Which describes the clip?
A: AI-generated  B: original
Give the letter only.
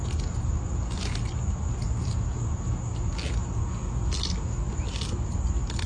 B